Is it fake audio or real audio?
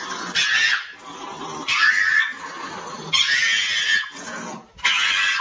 real